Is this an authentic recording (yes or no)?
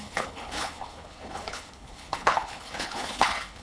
no